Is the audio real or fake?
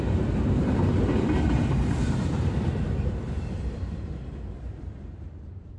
fake